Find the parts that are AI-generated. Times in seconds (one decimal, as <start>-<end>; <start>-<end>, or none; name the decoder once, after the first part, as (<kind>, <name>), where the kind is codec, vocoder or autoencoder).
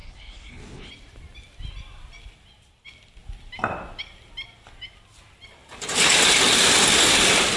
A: 0.0-0.9 (codec, HILCodec)